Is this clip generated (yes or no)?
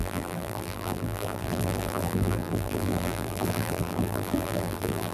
yes